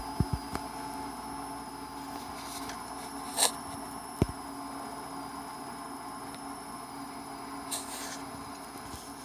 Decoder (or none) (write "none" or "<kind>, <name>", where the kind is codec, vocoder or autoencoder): none